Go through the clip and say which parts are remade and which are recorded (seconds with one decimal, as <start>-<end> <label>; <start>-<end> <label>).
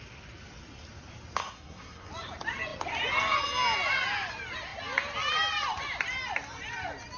0.0-1.4 recorded; 1.4-2.1 remade; 2.1-7.2 recorded